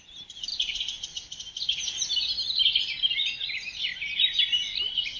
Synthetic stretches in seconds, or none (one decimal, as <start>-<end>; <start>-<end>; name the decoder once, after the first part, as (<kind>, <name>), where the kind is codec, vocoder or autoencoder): none